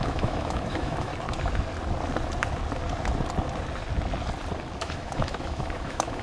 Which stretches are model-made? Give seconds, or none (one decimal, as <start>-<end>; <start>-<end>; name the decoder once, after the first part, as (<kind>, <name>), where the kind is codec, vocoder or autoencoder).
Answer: 0.0-1.1 (autoencoder, DAC-VAE); 4.8-6.2